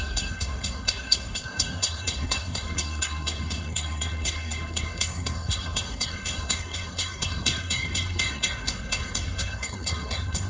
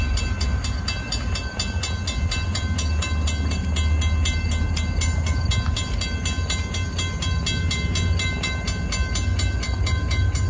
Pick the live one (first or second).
second